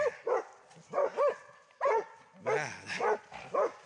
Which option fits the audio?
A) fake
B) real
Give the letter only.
B